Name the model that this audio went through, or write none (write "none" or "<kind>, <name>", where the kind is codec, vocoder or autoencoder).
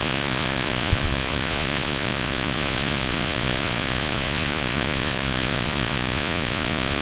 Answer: vocoder, Vocos